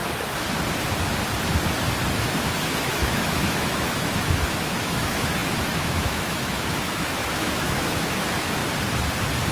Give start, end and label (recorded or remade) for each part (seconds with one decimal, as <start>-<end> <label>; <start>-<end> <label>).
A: 0.0-2.3 recorded; 2.3-8.6 remade; 8.6-9.5 recorded